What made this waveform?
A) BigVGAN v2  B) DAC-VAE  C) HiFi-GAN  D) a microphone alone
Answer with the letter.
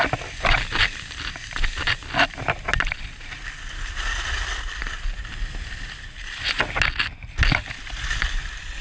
D